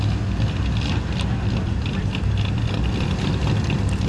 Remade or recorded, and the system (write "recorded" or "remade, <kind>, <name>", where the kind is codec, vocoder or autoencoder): recorded